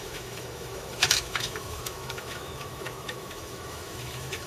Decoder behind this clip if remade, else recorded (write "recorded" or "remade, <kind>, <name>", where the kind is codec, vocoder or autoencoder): remade, autoencoder, DAC-VAE